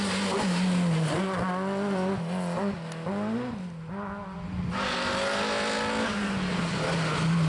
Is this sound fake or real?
real